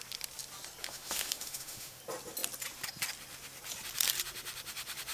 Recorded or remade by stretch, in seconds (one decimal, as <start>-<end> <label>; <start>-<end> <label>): 0.0-0.8 recorded; 0.8-2.0 remade; 2.0-5.1 recorded